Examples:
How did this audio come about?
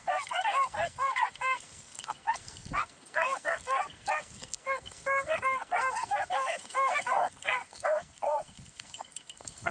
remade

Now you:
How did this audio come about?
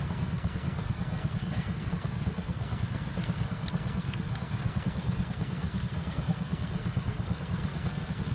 remade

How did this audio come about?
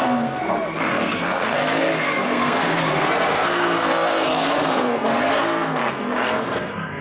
remade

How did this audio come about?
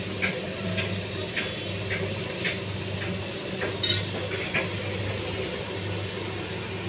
recorded